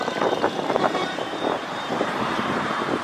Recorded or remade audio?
remade